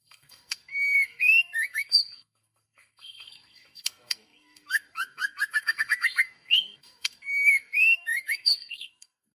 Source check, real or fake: fake